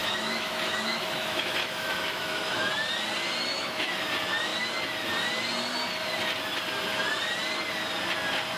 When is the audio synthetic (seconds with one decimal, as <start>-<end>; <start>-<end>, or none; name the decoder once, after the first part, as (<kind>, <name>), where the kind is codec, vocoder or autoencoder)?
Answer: 0.0-2.7 (autoencoder, DAC-VAE); 3.5-4.0